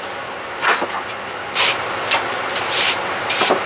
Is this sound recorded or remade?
recorded